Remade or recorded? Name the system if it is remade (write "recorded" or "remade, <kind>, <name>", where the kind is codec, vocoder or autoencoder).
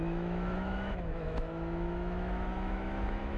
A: remade, autoencoder, DAC-VAE